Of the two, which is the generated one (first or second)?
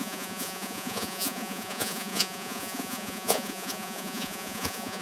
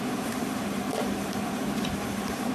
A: first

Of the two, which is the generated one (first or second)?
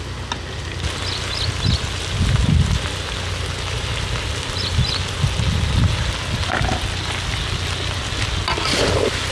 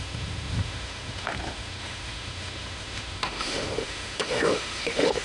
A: second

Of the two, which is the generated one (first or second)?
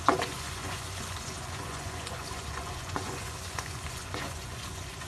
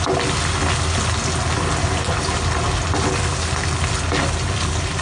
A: first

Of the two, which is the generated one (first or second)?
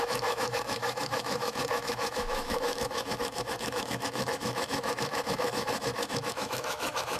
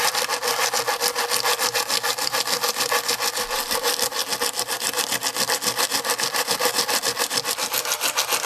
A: first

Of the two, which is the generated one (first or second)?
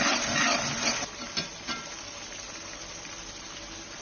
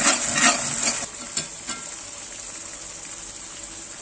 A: first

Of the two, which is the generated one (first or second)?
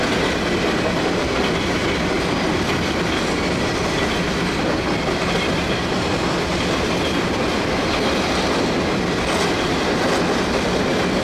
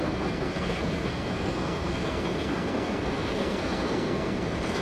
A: second